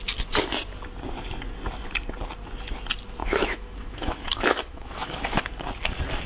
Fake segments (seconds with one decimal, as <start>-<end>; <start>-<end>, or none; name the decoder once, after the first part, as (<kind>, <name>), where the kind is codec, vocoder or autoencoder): 3.2-5.4 (autoencoder, DAC-VAE)